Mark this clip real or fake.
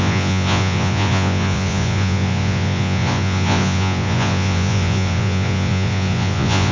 fake